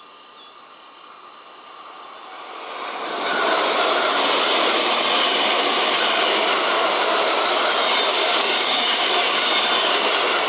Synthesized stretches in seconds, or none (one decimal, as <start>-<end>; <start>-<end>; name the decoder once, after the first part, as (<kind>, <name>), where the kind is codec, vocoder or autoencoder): 8.1-9.1 (codec, DAC)